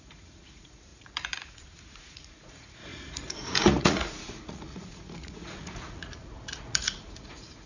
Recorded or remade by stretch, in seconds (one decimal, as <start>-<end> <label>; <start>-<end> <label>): 0.0-7.7 remade